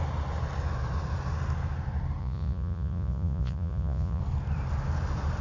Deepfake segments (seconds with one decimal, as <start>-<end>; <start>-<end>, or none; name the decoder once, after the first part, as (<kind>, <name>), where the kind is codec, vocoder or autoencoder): 2.2-4.2 (vocoder, Vocos)